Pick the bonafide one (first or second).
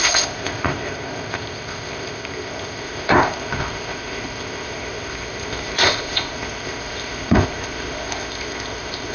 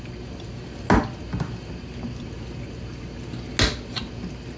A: second